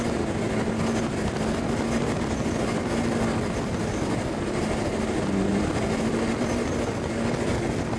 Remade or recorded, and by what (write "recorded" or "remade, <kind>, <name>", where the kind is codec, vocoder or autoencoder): recorded